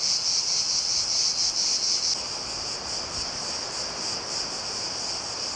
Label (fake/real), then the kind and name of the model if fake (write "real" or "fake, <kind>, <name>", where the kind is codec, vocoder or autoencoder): real